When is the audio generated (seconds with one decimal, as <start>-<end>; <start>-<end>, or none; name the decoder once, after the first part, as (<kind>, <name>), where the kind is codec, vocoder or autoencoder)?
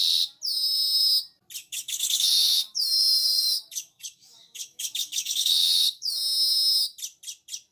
1.6-6.2 (codec, DAC)